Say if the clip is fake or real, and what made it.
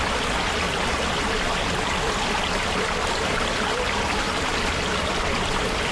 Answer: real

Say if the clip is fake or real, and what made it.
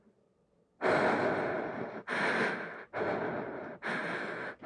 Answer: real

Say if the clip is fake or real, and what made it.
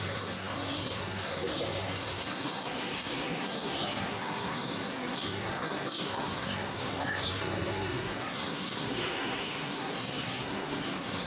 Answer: fake, codec, SNAC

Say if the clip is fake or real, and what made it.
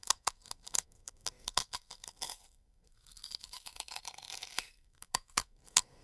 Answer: fake, codec, SNAC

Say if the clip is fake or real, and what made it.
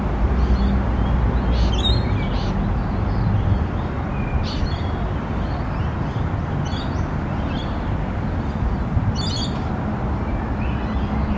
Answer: real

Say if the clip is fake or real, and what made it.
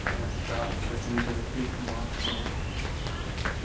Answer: real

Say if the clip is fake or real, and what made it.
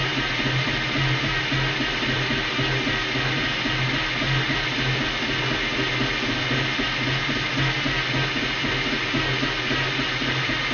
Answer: real